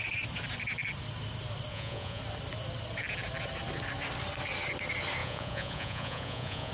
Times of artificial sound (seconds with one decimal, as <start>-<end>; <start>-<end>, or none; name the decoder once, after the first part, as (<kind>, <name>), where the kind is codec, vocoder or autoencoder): 1.7-2.2 (vocoder, Vocos); 5.2-6.7

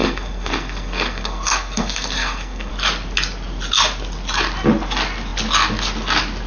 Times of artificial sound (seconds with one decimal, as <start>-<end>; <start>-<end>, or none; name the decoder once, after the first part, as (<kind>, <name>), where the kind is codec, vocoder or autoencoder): 0.0-2.7 (codec, SNAC)

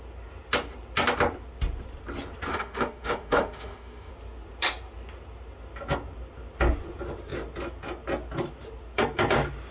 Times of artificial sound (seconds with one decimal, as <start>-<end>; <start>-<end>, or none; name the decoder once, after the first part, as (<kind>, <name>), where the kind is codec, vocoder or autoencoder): 2.5-4.1 (autoencoder, DAC-VAE)

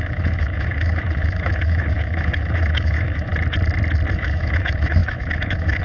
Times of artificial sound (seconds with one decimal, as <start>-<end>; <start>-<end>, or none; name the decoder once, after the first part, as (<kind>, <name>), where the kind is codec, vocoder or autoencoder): 0.0-3.3 (autoencoder, DAC-VAE); 4.1-5.8

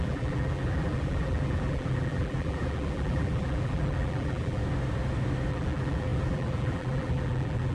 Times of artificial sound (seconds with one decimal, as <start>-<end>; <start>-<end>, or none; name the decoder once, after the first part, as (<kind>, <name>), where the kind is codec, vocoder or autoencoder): 0.0-4.6 (vocoder, BigVGAN v2); 5.5-7.7